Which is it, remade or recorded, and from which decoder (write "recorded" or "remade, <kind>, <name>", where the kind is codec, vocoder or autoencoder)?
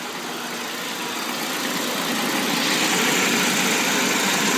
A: recorded